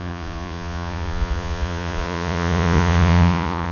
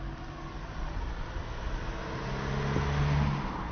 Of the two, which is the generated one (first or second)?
first